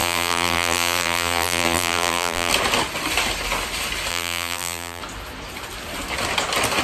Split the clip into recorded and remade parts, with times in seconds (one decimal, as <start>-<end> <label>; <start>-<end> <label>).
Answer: 0.0-2.5 remade; 2.5-4.1 recorded; 4.1-5.0 remade; 5.0-6.8 recorded